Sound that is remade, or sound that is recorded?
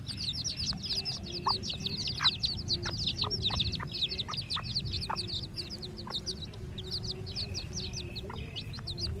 recorded